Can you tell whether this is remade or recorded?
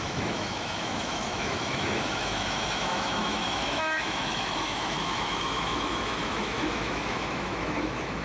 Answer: remade